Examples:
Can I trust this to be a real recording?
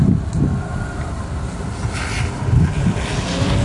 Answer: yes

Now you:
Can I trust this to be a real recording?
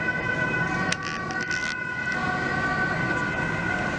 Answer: yes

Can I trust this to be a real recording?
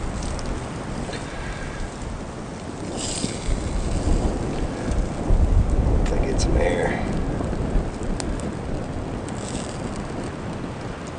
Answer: yes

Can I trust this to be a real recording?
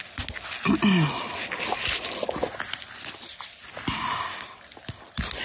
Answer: yes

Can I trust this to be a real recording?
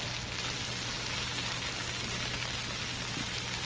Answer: yes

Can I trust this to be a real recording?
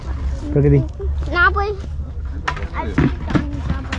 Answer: yes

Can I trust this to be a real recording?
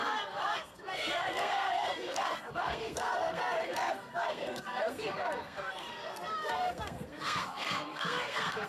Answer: no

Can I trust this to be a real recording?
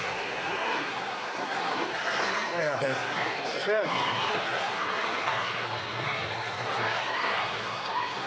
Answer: no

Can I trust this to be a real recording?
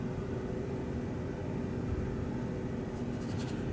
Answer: yes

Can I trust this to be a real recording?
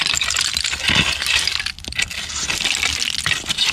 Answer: yes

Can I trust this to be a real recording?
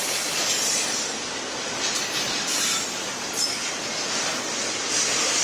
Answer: yes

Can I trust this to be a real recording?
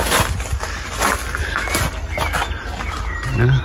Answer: yes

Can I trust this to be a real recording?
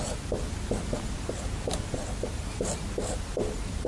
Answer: yes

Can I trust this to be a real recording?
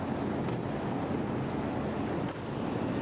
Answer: yes